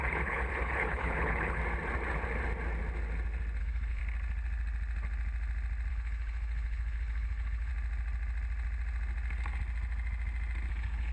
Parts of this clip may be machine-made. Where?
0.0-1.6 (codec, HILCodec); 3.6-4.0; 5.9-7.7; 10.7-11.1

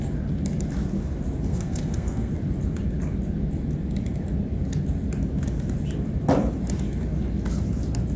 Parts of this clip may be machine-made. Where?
1.5-2.3 (codec, SNAC)

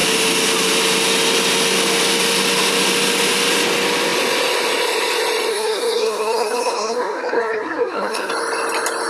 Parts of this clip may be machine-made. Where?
5.5-8.3 (codec, SNAC)